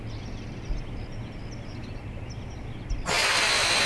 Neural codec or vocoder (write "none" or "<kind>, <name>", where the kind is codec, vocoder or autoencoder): none